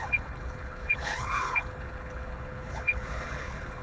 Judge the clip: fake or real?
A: fake